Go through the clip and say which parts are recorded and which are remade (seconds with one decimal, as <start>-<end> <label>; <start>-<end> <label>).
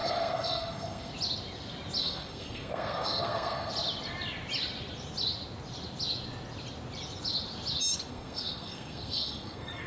0.0-1.1 remade; 1.1-2.0 recorded; 2.0-3.7 remade; 3.7-8.1 recorded; 8.1-9.9 remade